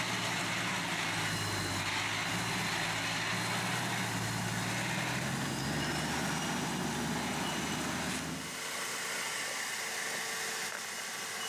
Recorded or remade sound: recorded